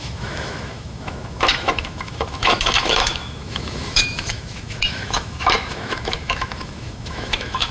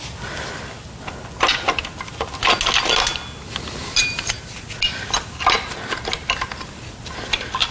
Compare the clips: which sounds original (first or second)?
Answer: second